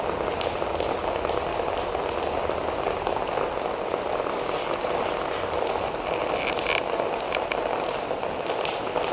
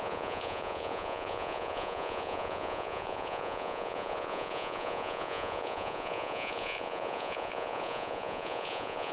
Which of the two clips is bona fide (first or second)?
first